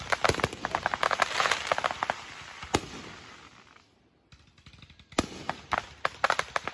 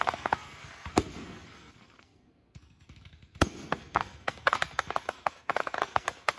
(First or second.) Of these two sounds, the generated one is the second